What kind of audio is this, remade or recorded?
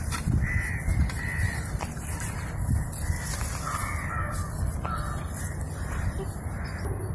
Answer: recorded